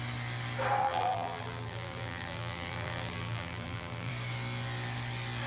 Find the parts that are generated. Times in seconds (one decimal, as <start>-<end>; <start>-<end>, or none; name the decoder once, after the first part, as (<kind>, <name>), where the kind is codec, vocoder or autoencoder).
0.8-4.1 (vocoder, BigVGAN v2)